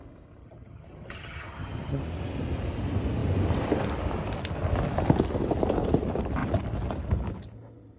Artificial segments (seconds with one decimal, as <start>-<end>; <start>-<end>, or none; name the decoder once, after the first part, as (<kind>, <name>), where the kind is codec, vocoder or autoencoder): 0.4-2.0 (vocoder, HiFi-GAN)